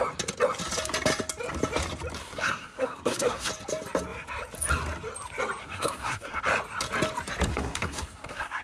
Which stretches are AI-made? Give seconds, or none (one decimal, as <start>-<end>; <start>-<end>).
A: 2.2-3.5; 5.6-6.4; 7.5-8.6